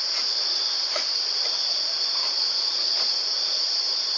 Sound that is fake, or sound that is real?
real